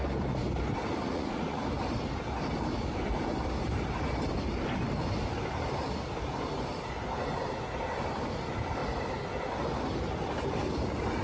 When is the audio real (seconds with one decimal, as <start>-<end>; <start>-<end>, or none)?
0.0-1.0; 1.6-11.2